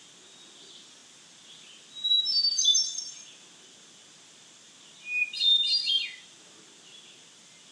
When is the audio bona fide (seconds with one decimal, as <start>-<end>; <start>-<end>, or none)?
0.0-7.7